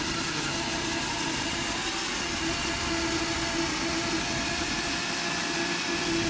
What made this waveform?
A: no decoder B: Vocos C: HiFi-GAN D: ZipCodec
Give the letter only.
A